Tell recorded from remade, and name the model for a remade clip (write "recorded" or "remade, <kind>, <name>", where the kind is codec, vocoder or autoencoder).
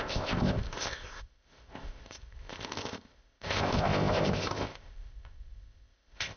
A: remade, codec, ZipCodec